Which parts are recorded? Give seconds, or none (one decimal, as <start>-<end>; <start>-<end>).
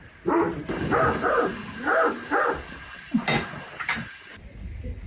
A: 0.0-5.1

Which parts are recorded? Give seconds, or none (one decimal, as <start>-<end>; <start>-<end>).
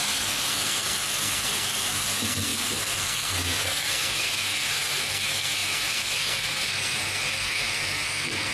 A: none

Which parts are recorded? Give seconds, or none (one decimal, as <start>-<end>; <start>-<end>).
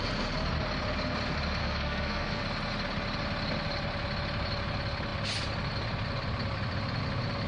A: 0.0-1.6; 2.4-7.5